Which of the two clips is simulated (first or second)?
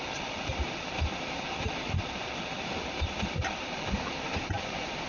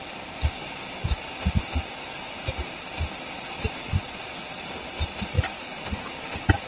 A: first